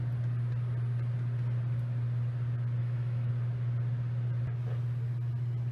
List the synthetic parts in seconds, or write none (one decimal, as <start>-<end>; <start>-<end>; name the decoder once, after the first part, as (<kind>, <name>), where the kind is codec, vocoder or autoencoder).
2.8-3.3 (autoencoder, DAC-VAE)

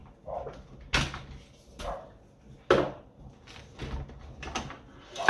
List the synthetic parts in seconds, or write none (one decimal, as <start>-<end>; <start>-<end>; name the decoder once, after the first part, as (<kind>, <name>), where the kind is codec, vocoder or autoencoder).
none

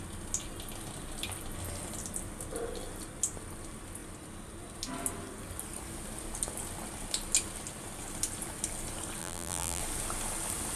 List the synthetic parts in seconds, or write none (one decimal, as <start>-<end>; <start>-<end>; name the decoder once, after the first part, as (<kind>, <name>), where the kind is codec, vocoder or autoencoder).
9.2-9.8 (vocoder, BigVGAN v2)

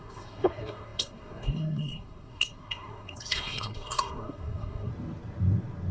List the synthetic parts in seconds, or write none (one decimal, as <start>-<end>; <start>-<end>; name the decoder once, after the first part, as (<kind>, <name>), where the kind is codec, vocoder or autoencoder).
0.0-4.9 (codec, SNAC)